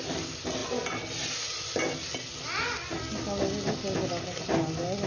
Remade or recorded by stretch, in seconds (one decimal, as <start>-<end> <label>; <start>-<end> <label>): 0.0-5.1 recorded